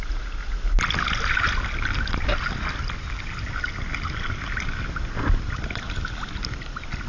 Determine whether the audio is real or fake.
real